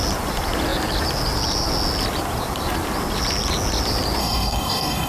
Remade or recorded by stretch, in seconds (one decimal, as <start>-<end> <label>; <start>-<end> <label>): 0.0-4.2 recorded; 4.2-5.1 remade